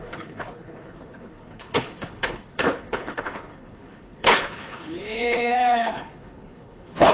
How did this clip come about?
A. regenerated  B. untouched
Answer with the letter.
A